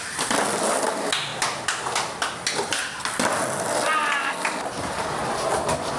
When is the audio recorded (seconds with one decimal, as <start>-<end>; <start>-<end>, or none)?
0.0-6.0